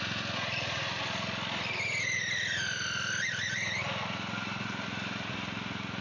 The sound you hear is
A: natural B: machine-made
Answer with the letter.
A